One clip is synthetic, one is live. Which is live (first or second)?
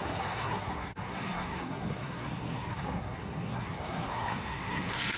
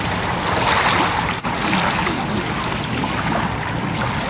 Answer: second